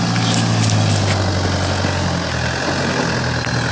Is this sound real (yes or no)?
yes